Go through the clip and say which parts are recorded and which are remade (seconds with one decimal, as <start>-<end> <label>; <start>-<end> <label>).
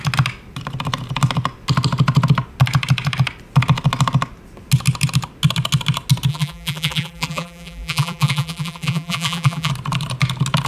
0.0-6.3 recorded; 6.3-9.7 remade; 9.7-10.7 recorded